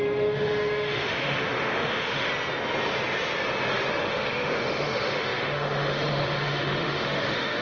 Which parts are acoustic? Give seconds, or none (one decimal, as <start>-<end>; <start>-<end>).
2.3-3.9